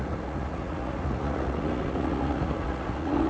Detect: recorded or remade remade